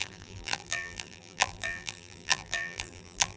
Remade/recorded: remade